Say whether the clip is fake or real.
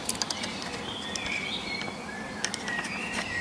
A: real